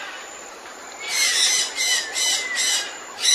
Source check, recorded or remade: remade